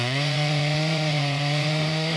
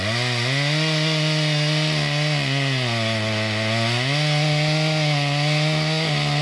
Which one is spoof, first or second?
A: first